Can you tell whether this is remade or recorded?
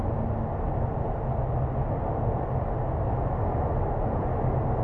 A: recorded